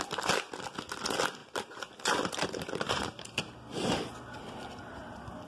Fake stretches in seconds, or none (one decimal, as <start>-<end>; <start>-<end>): 1.4-3.4